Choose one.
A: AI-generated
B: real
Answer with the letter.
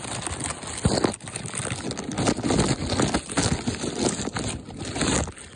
B